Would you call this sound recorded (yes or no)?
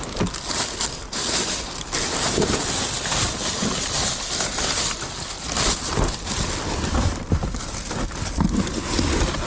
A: yes